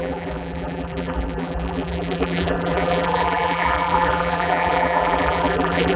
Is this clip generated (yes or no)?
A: yes